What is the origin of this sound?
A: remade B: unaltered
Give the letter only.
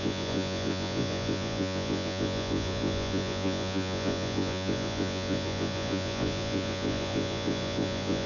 A